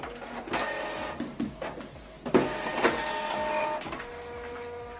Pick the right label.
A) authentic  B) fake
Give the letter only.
A